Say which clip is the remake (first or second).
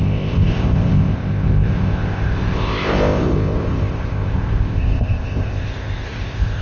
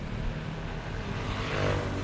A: first